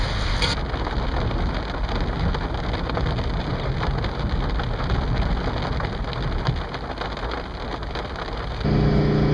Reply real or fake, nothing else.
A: real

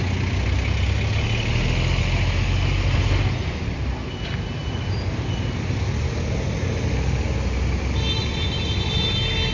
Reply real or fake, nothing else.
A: real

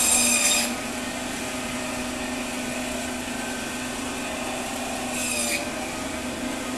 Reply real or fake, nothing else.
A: real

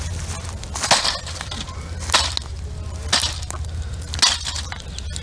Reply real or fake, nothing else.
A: real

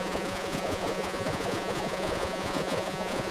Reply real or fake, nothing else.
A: fake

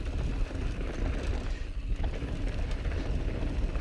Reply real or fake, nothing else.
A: real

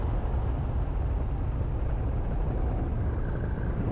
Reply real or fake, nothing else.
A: real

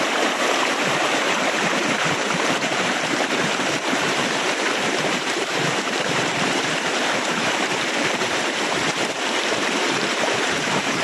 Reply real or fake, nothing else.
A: fake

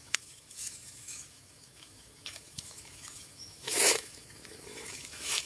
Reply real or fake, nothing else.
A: fake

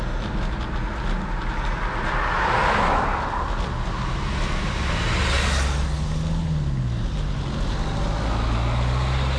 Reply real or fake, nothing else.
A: real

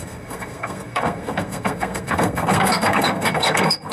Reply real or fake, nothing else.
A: fake